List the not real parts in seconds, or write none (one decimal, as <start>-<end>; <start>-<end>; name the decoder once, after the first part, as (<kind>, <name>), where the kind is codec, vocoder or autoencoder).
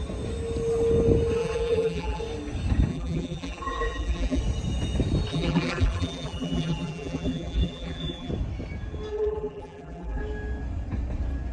1.4-2.2 (vocoder, BigVGAN v2); 2.9-4.4; 5.3-8.3; 9.1-10.2